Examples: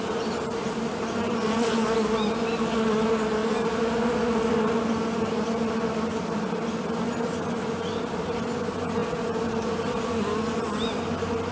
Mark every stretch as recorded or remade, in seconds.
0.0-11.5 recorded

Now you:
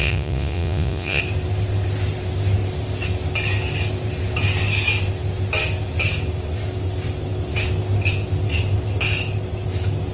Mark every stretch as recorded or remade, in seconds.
0.0-1.2 remade; 1.2-10.1 recorded

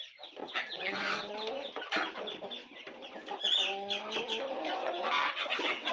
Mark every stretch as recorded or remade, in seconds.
0.0-0.4 recorded; 0.4-1.3 remade; 1.3-4.8 recorded; 4.8-5.9 remade

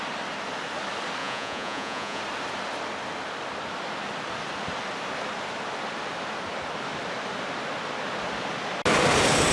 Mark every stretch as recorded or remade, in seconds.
0.0-1.2 recorded; 1.2-2.2 remade; 2.2-9.5 recorded

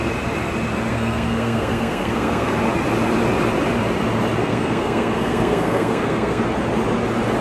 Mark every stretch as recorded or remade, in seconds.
0.0-0.9 recorded; 0.9-2.5 remade; 2.5-4.4 recorded; 4.4-6.4 remade; 6.4-7.4 recorded

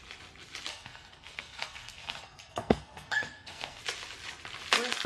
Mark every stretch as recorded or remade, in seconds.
0.0-0.7 recorded; 0.7-3.8 remade; 3.8-5.1 recorded

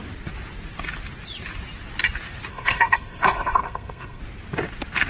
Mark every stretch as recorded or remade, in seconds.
0.0-2.5 recorded; 2.5-4.2 remade; 4.2-5.1 recorded